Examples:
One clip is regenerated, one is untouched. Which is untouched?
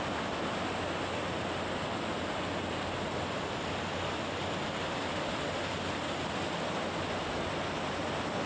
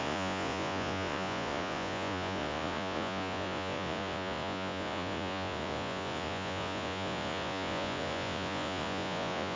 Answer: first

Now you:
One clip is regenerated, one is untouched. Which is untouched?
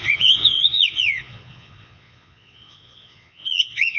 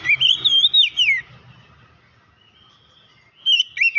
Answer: second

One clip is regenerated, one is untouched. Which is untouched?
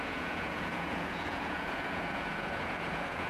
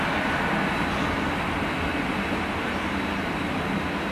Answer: second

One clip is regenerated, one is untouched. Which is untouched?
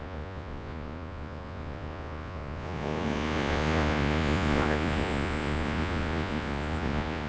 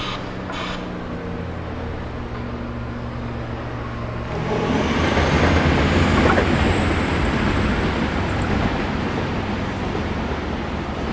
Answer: second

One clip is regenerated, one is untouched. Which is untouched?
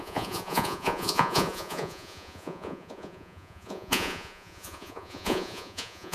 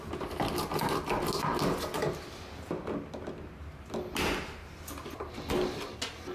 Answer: second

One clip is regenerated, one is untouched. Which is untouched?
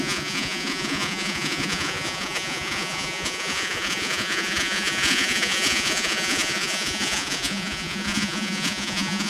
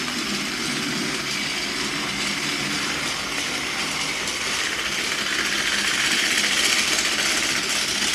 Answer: second